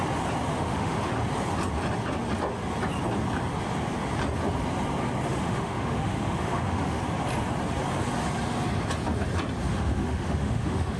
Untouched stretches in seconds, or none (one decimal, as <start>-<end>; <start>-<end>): 0.0-0.5; 1.1-5.3; 7.0-9.7